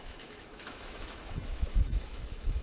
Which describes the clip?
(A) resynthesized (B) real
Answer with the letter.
A